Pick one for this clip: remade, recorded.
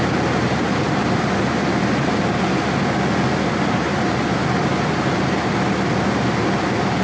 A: recorded